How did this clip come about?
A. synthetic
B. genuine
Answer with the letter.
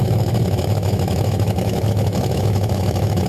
A